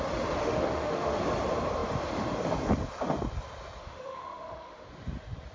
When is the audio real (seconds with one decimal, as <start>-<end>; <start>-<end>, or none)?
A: 0.0-0.4; 1.2-3.8; 4.9-5.5